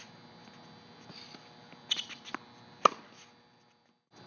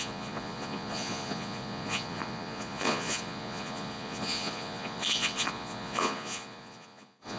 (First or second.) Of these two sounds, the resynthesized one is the second